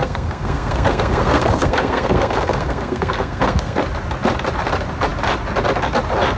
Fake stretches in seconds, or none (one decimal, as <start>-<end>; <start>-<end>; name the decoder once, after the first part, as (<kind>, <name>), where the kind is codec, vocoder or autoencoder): 0.0-3.8 (codec, SNAC)